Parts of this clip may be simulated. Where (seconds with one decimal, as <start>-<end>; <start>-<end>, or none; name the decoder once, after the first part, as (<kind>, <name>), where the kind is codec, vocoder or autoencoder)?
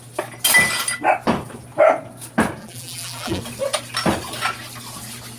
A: 2.6-3.4 (vocoder, BigVGAN v2)